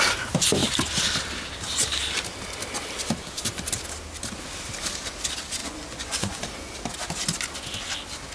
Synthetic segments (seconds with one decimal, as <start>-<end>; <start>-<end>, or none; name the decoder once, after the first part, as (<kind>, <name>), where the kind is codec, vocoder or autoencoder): 5.6-6.5 (vocoder, Vocos)